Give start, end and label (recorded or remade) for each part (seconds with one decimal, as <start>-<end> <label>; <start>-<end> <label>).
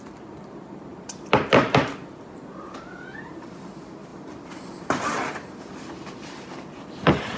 0.0-0.9 recorded; 0.9-2.3 remade; 2.3-4.1 recorded; 4.1-5.0 remade; 5.0-7.4 recorded